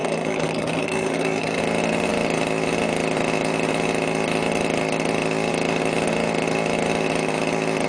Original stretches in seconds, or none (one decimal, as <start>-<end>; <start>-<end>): 1.6-7.9